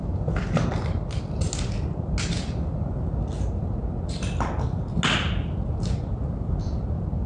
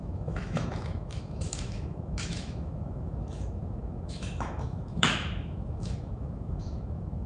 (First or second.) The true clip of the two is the first